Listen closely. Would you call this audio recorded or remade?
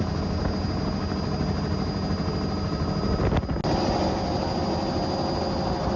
recorded